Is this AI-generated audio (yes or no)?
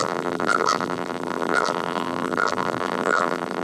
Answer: yes